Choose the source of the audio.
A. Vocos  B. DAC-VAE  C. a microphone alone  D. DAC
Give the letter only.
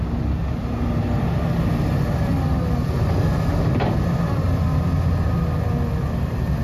C